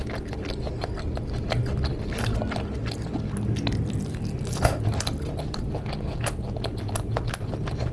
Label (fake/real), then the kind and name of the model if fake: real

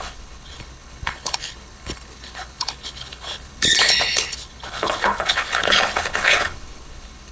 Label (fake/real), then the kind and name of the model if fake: fake, codec, HILCodec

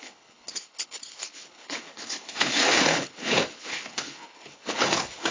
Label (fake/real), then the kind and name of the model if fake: fake, codec, HILCodec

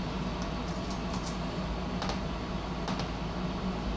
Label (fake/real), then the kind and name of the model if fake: real